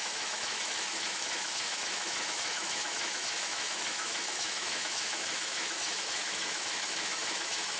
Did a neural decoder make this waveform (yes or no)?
yes